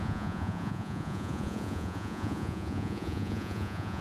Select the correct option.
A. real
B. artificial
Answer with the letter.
B